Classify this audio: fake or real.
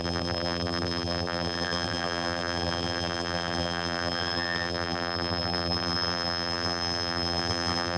fake